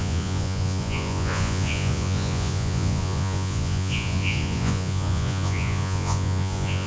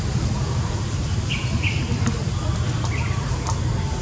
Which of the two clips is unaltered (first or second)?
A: second